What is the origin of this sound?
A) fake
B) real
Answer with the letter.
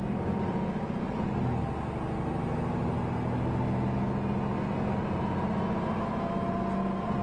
B